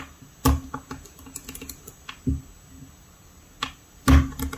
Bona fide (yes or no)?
yes